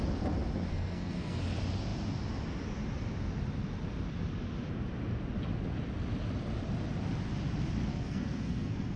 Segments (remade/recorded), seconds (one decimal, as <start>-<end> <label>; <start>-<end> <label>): 0.0-0.7 recorded; 0.7-1.4 remade; 1.4-7.9 recorded; 7.9-9.0 remade